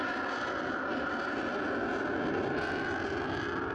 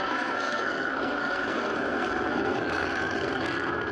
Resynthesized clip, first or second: second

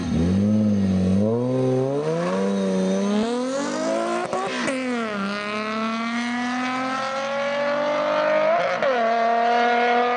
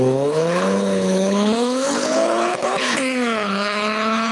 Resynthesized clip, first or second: second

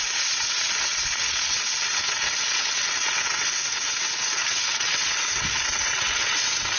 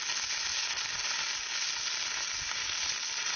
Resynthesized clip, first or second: first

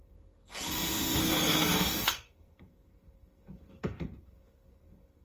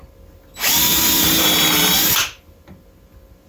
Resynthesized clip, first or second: first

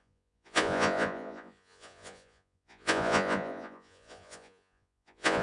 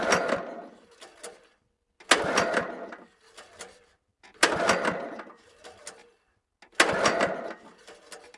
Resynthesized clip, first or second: first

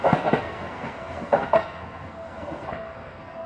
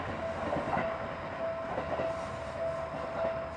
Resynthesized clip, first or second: first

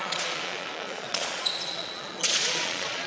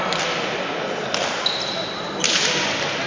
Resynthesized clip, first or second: first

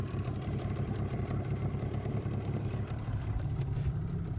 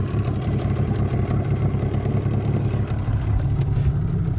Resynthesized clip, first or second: first